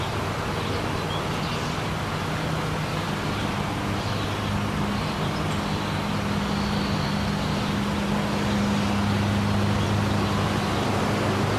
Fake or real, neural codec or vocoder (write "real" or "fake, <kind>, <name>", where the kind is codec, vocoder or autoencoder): real